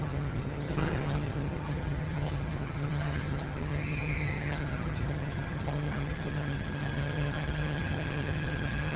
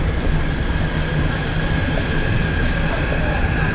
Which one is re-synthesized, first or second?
first